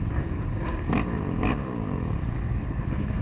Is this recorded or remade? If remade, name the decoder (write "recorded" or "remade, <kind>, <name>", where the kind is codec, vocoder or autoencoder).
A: remade, codec, DAC